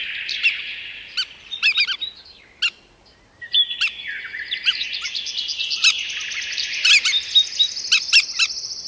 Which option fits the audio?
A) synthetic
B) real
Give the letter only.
B